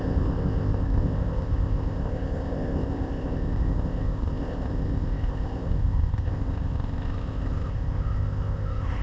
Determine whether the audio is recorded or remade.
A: remade